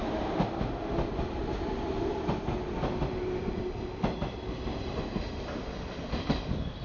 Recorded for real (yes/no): yes